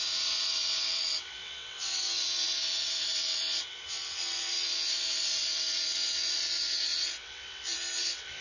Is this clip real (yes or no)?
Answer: no